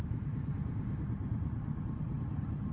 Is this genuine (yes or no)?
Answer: yes